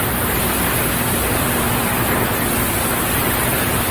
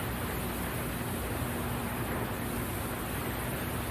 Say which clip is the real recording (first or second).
second